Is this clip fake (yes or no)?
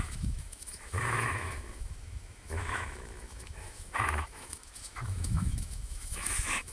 yes